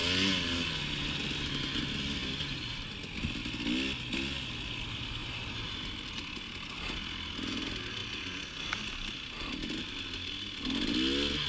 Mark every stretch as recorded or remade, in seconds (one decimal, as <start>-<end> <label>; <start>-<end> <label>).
0.0-2.2 recorded; 2.2-2.9 remade; 2.9-5.2 recorded; 5.2-5.8 remade; 5.8-11.5 recorded